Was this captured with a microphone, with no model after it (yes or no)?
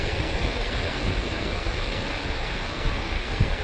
no